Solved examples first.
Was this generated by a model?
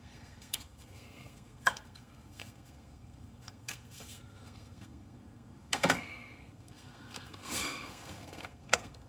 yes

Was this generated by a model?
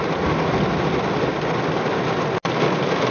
no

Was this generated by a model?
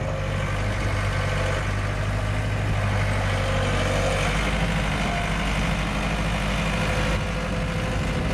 no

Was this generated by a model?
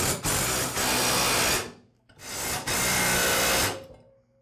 no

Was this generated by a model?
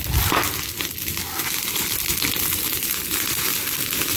no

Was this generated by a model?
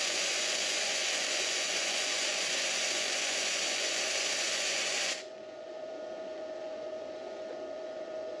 yes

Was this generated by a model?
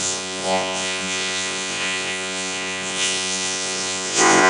yes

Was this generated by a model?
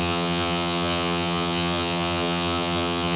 yes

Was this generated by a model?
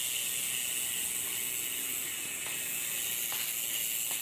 no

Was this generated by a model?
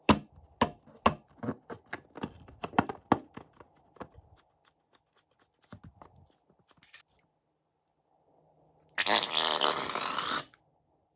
no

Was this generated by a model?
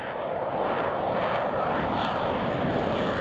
no